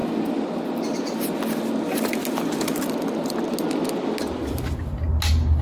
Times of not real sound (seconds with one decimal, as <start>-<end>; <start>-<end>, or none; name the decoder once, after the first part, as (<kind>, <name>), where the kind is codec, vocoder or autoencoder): none